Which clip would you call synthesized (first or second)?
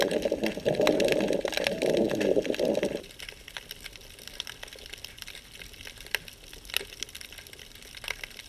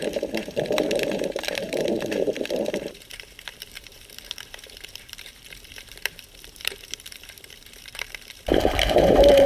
second